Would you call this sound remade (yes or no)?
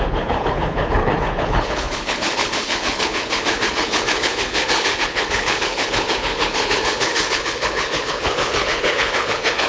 yes